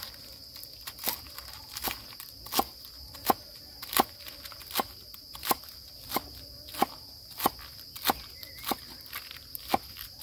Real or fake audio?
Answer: real